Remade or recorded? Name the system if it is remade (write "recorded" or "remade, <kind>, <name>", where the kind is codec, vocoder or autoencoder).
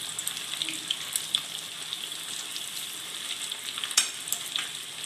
recorded